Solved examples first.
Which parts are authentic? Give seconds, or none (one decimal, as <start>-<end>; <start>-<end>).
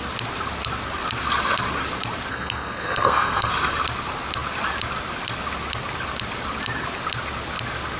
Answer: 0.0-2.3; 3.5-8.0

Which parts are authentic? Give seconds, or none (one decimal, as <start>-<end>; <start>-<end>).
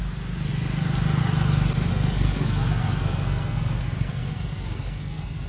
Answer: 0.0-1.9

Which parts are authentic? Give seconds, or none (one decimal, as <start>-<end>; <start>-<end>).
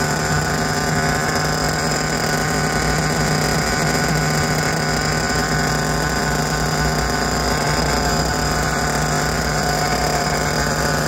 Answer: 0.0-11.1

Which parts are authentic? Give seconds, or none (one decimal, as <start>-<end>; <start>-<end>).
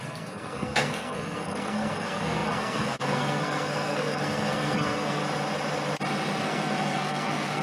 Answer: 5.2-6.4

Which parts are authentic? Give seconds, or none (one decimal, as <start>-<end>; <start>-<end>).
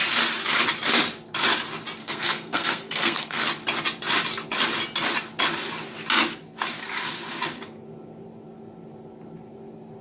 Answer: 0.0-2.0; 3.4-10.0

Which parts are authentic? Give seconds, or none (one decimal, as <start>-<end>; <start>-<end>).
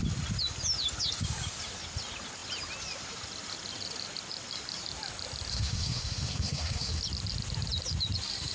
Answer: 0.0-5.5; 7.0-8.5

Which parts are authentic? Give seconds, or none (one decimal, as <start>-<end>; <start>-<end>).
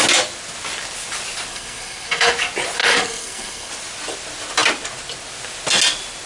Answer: 0.0-1.5; 2.3-2.8; 3.7-6.3